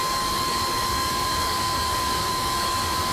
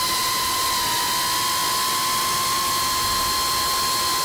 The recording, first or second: second